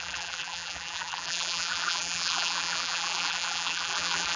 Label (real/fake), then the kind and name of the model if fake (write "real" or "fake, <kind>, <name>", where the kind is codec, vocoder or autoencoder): fake, vocoder, BigVGAN v2